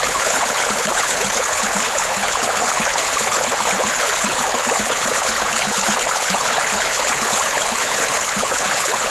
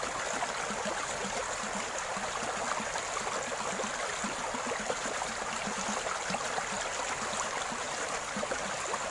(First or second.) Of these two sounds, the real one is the second